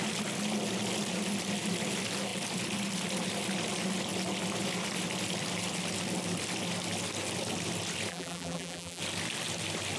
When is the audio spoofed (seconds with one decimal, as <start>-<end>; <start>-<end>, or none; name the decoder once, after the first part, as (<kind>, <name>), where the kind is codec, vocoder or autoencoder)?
8.1-9.0 (vocoder, BigVGAN v2)